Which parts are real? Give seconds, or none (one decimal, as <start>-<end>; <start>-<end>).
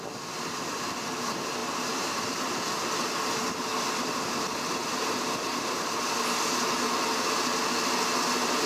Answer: 0.0-1.6; 2.3-8.7